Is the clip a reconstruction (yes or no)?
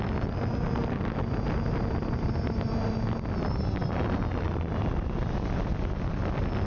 no